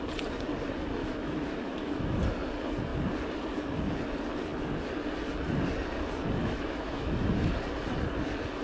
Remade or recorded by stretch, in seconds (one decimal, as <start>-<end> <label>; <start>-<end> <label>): 0.0-1.0 recorded; 1.0-2.2 remade; 2.2-6.4 recorded; 6.4-7.5 remade; 7.5-8.6 recorded